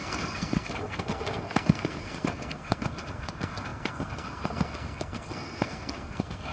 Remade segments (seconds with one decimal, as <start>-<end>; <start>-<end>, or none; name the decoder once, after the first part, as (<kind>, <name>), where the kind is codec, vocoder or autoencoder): 0.0-6.5 (codec, SNAC)